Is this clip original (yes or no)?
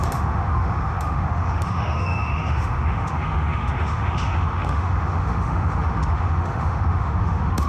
no